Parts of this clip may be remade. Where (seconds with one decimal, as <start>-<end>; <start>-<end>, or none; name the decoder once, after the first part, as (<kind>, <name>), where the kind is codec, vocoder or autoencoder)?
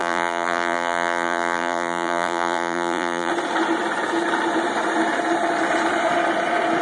0.0-3.3 (vocoder, BigVGAN v2)